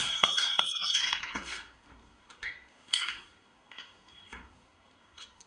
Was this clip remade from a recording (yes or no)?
yes